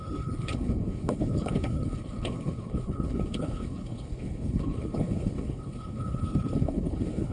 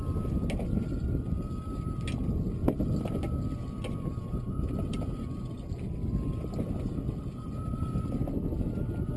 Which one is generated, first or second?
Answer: first